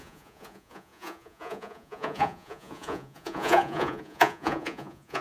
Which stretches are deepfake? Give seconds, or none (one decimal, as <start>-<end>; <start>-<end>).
0.0-5.2